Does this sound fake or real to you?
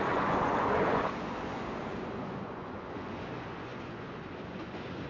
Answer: fake